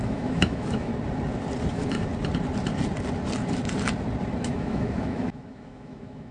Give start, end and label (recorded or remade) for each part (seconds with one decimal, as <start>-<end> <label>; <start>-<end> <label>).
0.0-0.9 remade; 0.9-1.7 recorded; 1.7-2.1 remade; 2.1-4.4 recorded; 4.4-6.3 remade